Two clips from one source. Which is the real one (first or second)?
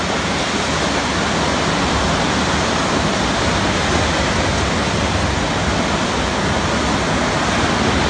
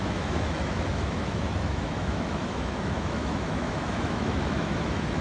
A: first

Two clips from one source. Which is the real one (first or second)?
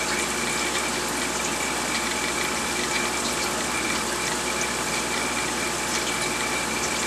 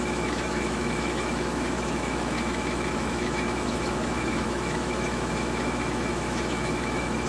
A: first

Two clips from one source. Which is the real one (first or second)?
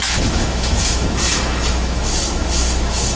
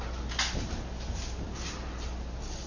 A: second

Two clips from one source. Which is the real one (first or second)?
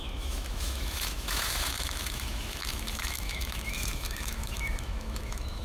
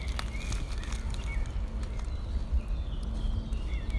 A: second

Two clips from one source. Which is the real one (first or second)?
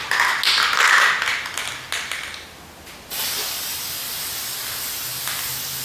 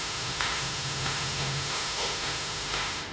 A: first